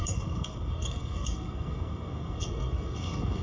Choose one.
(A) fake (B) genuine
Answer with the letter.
A